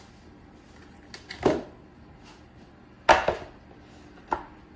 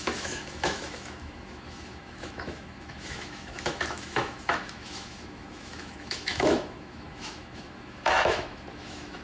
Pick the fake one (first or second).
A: second